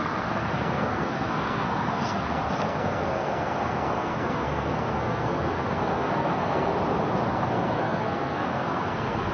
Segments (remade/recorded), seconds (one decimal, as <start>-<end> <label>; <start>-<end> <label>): 0.0-6.7 remade; 6.7-7.3 recorded; 7.3-9.3 remade